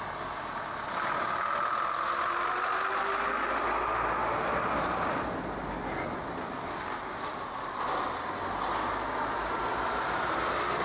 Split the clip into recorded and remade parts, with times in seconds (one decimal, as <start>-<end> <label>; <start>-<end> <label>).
0.0-10.8 recorded